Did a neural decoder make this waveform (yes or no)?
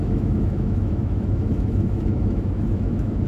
yes